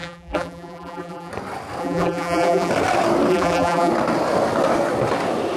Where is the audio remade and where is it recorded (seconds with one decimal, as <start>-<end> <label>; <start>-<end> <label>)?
0.0-1.3 remade; 1.3-1.8 recorded; 1.8-2.7 remade; 2.7-3.3 recorded; 3.3-3.9 remade; 3.9-5.6 recorded